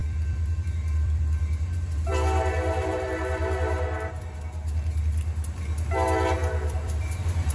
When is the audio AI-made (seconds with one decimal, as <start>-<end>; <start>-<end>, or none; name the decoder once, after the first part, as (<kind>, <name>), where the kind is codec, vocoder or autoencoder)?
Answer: 0.0-1.4 (vocoder, BigVGAN v2); 6.4-7.5